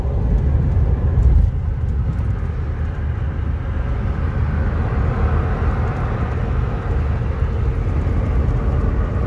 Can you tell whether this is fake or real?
real